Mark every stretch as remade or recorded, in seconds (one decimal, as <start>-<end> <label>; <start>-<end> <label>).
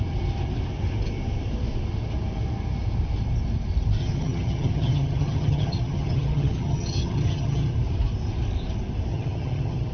0.0-4.0 recorded; 4.0-7.7 remade; 7.7-9.1 recorded; 9.1-9.9 remade